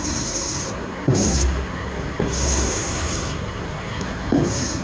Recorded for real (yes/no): no